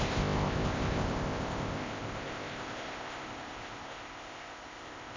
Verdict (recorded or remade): remade